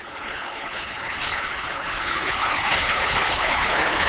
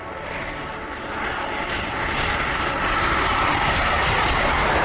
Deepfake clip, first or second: first